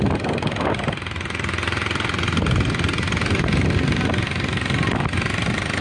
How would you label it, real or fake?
real